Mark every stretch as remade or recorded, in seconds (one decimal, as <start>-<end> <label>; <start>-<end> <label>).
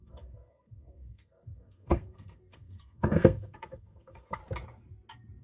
0.0-4.4 remade; 4.4-5.4 recorded